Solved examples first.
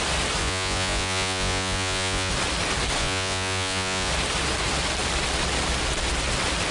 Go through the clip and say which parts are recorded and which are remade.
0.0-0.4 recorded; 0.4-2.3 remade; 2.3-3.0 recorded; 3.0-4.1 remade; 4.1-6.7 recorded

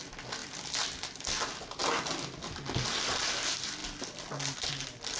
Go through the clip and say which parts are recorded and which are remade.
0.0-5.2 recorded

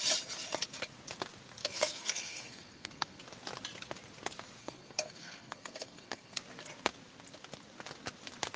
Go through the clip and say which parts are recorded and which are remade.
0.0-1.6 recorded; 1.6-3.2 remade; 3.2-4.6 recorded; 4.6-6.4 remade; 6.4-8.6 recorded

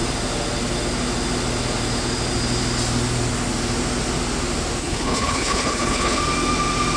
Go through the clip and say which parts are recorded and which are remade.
0.0-4.8 recorded; 4.8-6.2 remade; 6.2-7.0 recorded

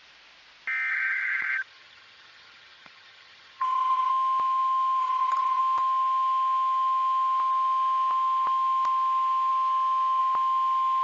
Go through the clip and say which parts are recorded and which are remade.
0.0-0.9 recorded; 0.9-4.1 remade; 4.1-5.0 recorded; 5.0-5.6 remade; 5.6-11.0 recorded

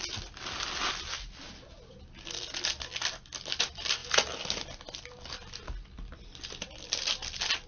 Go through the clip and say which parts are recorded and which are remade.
0.0-7.7 recorded

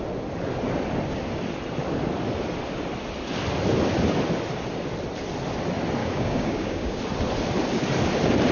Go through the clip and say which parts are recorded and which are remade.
0.0-6.0 recorded; 6.0-7.0 remade; 7.0-8.5 recorded